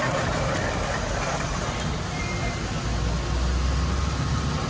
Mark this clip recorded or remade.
recorded